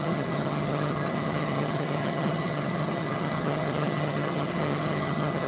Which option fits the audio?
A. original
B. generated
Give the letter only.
B